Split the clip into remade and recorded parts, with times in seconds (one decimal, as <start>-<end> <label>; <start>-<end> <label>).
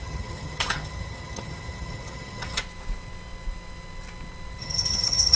0.0-2.6 remade; 2.6-4.6 recorded; 4.6-5.4 remade